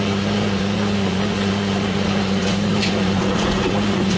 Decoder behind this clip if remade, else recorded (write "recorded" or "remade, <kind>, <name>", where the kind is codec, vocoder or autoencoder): remade, vocoder, Vocos